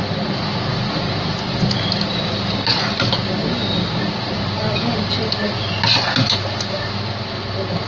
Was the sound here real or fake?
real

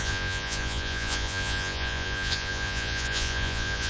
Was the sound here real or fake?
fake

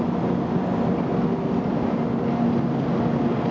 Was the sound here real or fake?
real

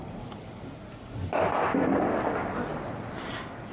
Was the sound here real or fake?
real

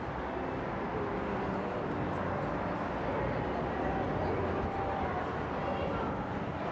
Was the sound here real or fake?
real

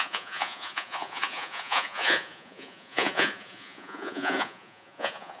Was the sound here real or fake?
fake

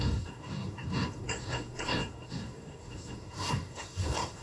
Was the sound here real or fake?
fake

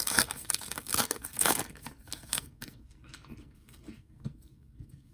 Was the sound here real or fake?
fake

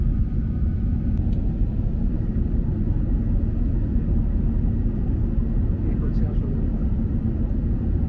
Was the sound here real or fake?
real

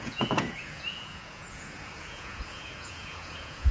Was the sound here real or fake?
fake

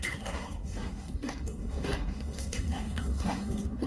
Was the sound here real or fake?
fake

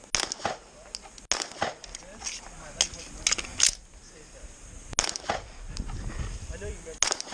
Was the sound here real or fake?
real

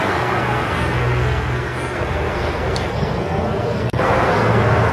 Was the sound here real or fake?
fake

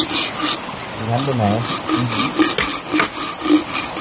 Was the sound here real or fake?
real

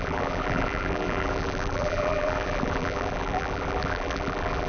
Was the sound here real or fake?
fake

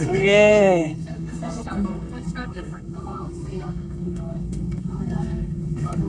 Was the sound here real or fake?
fake